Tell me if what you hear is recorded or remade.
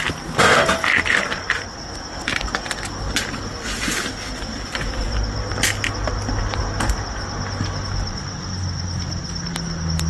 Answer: recorded